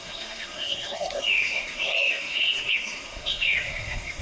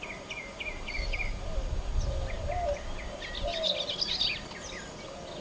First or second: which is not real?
first